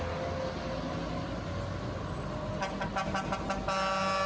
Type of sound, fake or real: real